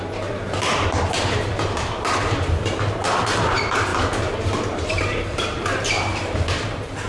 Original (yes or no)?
no